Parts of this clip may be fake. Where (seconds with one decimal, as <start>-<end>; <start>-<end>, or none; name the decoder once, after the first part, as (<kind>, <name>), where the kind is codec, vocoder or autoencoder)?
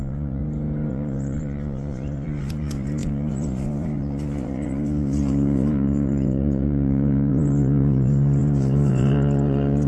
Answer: 0.0-0.4 (vocoder, Vocos); 0.9-9.9